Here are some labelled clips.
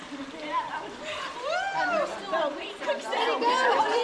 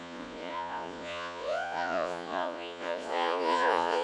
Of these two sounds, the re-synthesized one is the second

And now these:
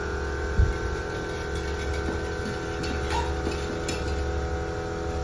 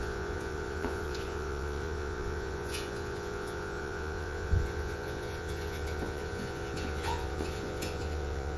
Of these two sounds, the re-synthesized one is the second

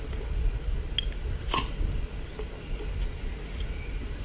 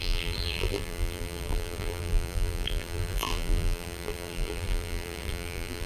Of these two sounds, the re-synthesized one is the second